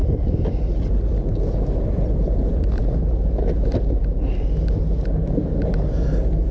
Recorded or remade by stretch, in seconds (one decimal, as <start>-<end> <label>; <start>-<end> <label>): 0.0-6.5 recorded